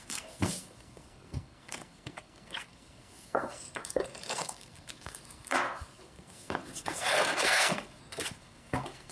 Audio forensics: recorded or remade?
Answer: remade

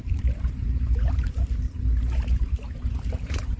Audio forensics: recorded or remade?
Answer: remade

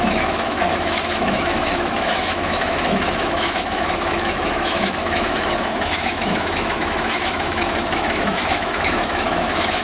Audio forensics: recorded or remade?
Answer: remade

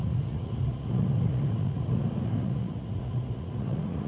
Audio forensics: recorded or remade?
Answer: remade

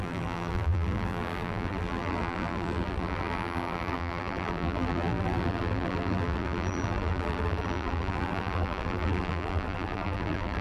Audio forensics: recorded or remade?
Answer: remade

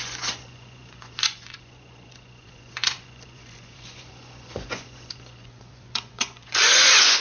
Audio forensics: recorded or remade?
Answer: remade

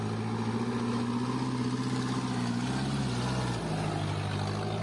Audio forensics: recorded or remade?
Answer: recorded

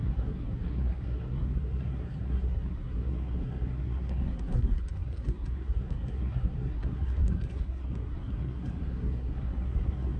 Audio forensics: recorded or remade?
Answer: remade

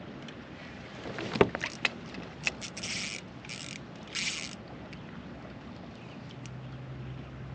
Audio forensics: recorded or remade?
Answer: recorded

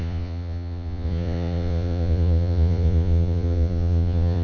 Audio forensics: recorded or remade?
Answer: remade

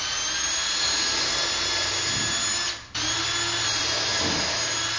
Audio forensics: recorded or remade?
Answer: recorded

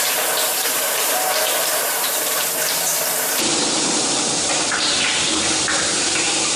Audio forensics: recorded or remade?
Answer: remade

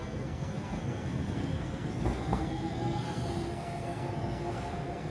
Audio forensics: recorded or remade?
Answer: remade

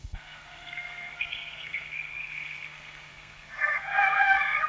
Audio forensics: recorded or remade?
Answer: remade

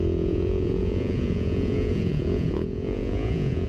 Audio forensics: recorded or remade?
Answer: remade